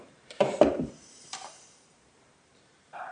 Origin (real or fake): fake